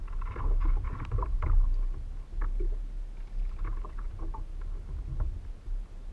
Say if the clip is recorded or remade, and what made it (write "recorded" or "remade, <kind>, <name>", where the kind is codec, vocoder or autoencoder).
recorded